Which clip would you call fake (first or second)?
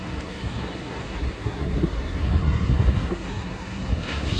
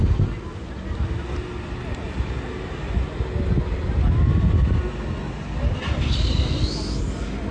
first